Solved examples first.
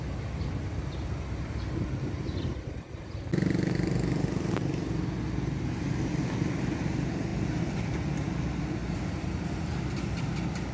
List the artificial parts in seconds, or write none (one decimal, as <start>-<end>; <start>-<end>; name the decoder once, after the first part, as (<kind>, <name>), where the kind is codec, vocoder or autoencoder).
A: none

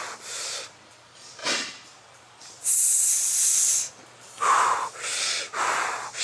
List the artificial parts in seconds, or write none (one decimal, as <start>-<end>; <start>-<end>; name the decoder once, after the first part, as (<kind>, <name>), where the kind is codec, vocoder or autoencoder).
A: 1.4-2.4 (vocoder, BigVGAN v2)

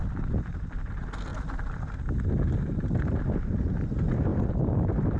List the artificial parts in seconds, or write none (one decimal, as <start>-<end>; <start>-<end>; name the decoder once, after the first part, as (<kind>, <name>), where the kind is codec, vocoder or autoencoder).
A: 4.3-5.2 (vocoder, BigVGAN v2)

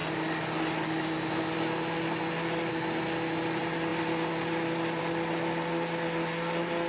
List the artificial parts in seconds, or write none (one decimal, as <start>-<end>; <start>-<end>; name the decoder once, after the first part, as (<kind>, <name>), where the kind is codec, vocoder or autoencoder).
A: none

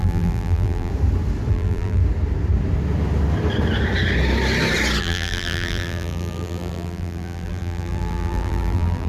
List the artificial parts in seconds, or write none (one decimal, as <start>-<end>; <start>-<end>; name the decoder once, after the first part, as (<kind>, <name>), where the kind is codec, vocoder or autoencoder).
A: 0.0-0.9 (vocoder, BigVGAN v2); 1.5-2.0; 5.0-9.1

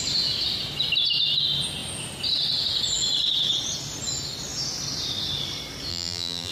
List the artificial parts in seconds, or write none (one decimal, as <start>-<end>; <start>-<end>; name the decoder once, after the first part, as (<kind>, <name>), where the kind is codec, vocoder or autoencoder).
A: 5.9-6.5 (vocoder, BigVGAN v2)

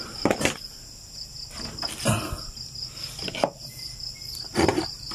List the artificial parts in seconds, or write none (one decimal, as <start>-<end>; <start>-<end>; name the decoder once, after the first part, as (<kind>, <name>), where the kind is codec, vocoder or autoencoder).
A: none

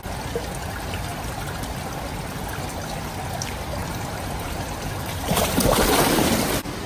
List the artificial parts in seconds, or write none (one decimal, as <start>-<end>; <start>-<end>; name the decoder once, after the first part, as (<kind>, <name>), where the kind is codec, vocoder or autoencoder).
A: 3.8-5.9 (vocoder, BigVGAN v2)